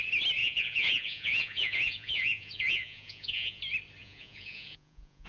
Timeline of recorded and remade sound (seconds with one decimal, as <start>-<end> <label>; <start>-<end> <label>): 0.0-0.4 recorded; 0.4-3.6 remade; 3.6-4.0 recorded; 4.0-5.3 remade